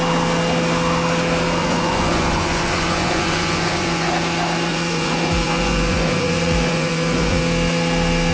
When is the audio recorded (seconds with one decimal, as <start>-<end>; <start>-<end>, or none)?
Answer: 0.0-1.6; 4.1-4.7; 7.4-8.3